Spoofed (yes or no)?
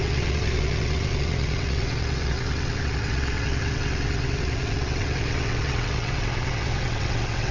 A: yes